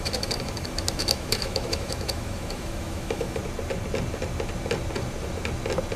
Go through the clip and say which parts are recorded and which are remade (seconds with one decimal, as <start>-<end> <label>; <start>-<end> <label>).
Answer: 0.0-3.4 remade; 3.4-6.0 recorded